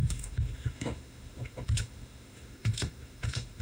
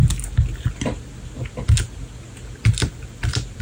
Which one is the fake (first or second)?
first